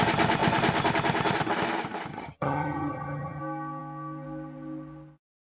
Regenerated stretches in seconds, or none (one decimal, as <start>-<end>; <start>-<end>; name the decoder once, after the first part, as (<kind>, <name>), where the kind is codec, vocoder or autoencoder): 2.1-3.4 (vocoder, HiFi-GAN)